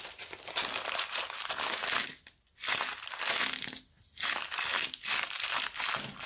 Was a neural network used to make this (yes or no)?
no